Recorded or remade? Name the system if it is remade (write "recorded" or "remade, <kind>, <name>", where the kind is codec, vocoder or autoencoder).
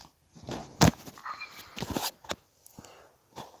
recorded